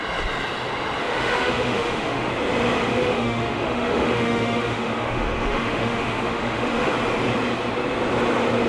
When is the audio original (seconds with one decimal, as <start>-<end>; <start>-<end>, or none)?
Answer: 0.0-1.0; 2.3-2.9; 6.9-8.7